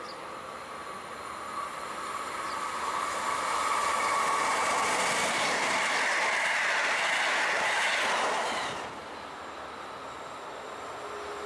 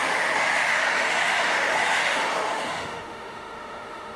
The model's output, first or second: second